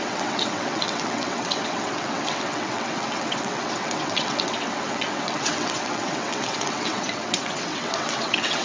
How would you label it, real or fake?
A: fake